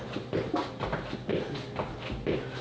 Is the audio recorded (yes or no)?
yes